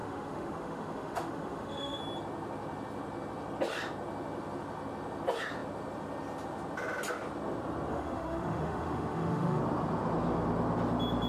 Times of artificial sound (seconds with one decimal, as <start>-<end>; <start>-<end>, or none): 0.0-2.0; 7.9-9.6